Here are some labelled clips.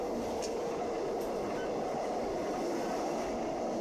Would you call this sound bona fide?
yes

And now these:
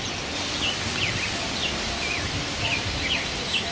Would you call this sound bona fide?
yes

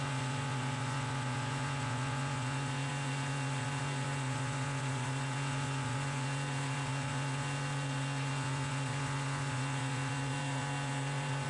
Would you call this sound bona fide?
no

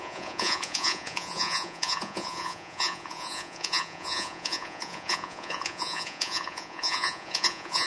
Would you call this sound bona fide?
no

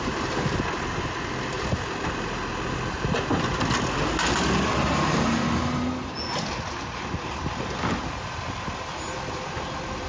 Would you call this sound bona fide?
yes